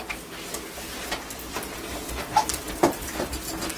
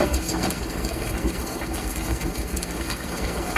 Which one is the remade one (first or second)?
second